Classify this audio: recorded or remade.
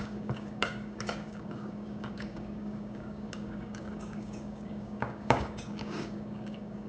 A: remade